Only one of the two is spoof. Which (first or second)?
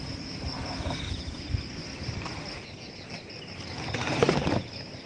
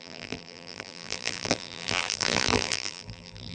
second